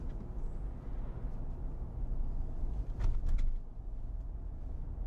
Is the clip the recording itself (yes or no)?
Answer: yes